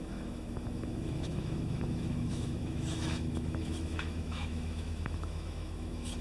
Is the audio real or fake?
fake